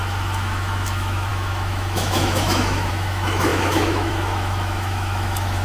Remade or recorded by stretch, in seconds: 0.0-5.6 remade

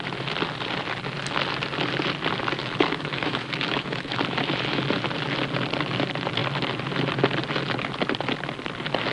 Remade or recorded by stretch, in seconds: 0.0-2.6 recorded; 2.6-4.2 remade; 4.2-9.1 recorded

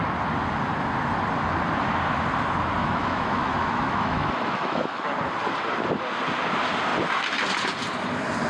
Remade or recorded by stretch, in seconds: 0.0-2.8 recorded; 2.8-5.1 remade; 5.1-8.5 recorded

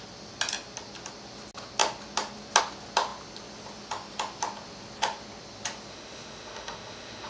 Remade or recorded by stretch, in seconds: 0.0-5.9 recorded; 5.9-7.3 remade

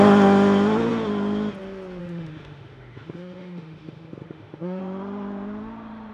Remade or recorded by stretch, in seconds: 0.0-2.0 recorded; 2.0-4.8 remade; 4.8-6.1 recorded